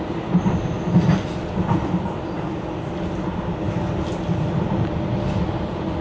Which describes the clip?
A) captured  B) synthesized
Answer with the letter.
A